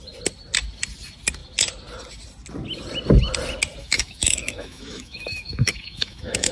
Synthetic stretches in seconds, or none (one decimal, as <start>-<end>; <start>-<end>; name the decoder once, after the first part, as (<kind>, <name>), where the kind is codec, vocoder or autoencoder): 3.8-6.5 (autoencoder, DAC-VAE)